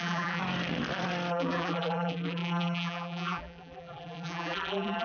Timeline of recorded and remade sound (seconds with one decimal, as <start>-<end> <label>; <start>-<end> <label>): 0.0-0.4 remade; 0.4-1.3 recorded; 1.3-5.0 remade